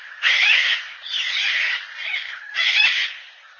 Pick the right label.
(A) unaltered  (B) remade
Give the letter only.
A